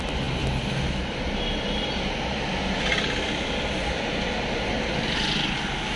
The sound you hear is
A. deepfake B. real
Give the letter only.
B